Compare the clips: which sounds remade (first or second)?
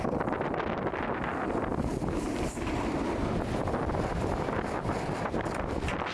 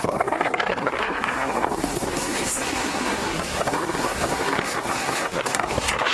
second